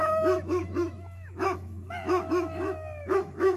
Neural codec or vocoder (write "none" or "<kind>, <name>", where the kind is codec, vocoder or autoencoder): autoencoder, DAC-VAE